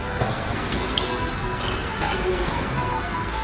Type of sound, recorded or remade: remade